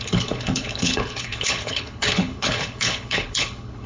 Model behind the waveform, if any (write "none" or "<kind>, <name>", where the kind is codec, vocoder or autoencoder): codec, HILCodec